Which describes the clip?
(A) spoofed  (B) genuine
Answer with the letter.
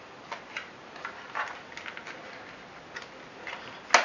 B